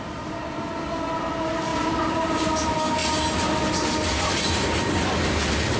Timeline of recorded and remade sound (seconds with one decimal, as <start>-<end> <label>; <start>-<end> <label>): 0.0-1.7 recorded; 1.7-2.5 remade; 2.5-5.8 recorded